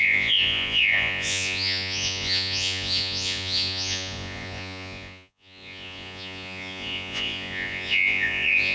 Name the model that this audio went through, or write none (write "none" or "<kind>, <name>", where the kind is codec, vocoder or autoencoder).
vocoder, Vocos